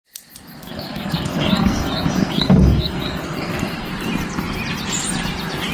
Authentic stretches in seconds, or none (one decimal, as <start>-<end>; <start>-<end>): 0.0-0.6; 3.9-5.7